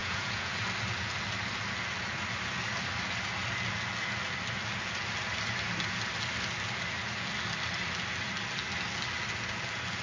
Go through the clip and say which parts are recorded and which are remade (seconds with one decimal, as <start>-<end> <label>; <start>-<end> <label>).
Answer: 0.0-0.6 remade; 0.6-10.0 recorded